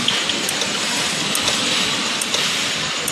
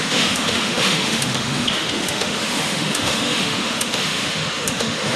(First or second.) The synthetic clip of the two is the second